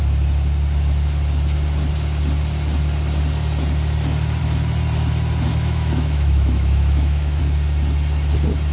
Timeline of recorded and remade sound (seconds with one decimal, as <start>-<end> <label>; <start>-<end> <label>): 0.0-5.5 recorded; 5.5-7.4 remade; 7.4-8.7 recorded